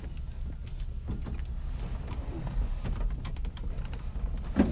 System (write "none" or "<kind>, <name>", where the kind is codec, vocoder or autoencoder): none